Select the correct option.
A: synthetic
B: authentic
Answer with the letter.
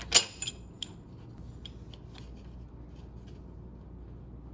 B